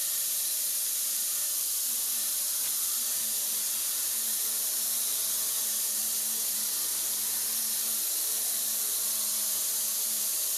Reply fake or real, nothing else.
fake